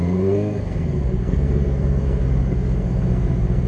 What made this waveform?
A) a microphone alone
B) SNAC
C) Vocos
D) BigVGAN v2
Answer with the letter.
B